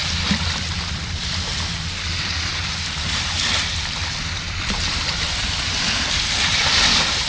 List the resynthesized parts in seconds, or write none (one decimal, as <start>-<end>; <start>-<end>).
none